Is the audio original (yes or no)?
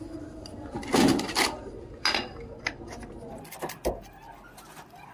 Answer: yes